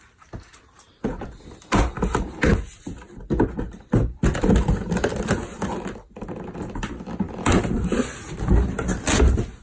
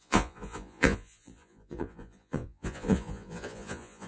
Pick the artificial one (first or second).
second